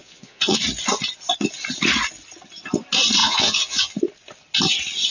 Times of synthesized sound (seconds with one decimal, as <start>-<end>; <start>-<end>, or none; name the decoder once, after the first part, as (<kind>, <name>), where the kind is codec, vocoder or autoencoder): 0.0-0.6 (vocoder, Vocos); 3.2-4.0